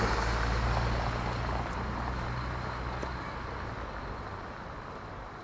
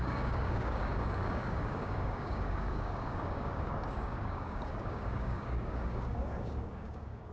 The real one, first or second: first